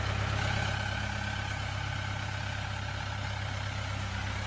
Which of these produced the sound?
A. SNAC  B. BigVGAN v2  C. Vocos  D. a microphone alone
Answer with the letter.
D